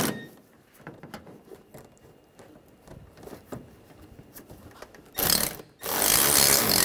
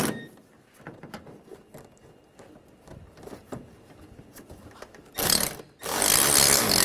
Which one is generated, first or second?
first